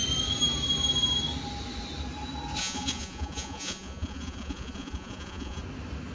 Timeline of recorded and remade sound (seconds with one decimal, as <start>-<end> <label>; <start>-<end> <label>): 0.0-2.6 recorded; 2.6-5.6 remade; 5.6-6.1 recorded